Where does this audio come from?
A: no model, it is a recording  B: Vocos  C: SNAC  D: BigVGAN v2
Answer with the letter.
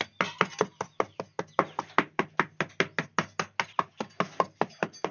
A